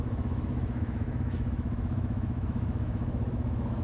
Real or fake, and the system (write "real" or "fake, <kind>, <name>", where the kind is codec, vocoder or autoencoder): fake, autoencoder, DAC-VAE